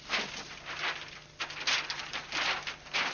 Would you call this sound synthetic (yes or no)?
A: no